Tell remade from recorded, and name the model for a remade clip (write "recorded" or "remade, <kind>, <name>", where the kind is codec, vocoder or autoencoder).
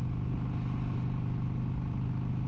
recorded